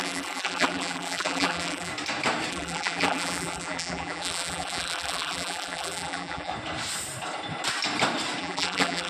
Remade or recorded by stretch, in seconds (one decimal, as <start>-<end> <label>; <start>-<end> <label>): 0.0-1.9 remade; 1.9-2.5 recorded; 2.5-6.5 remade; 6.5-8.4 recorded; 8.4-9.1 remade